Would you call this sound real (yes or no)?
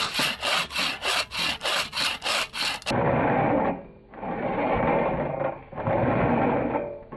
yes